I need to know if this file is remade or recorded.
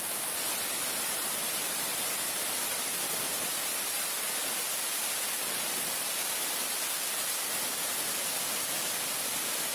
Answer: remade